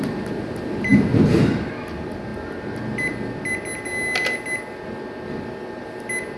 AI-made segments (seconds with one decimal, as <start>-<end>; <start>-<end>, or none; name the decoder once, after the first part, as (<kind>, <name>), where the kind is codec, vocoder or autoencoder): none